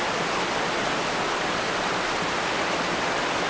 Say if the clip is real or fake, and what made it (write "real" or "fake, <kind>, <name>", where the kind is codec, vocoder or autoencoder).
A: real